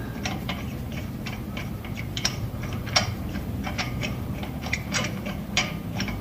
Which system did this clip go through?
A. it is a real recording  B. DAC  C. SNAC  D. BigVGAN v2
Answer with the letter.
D